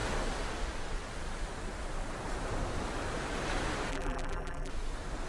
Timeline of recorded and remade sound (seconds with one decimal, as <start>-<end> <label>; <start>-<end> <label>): 0.0-3.9 recorded; 3.9-4.7 remade; 4.7-5.3 recorded